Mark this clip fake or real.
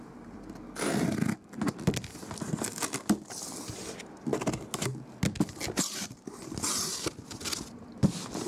real